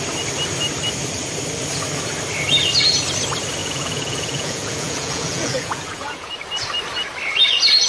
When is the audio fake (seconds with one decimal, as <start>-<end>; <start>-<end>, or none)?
3.6-6.3